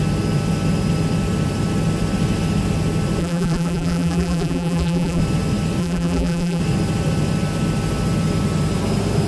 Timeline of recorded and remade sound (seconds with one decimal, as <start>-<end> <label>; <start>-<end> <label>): 0.0-3.2 recorded; 3.2-5.2 remade; 5.2-5.8 recorded; 5.8-6.6 remade; 6.6-9.3 recorded